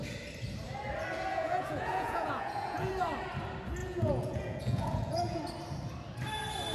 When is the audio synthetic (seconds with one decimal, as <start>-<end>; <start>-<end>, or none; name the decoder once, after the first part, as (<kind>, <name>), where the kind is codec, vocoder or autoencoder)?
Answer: 1.3-2.9 (vocoder, Vocos); 3.8-5.4